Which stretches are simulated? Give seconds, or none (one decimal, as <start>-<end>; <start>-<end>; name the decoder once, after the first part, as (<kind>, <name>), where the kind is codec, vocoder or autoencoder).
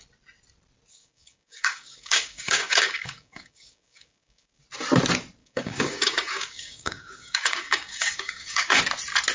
0.9-4.6 (codec, DAC); 5.4-8.8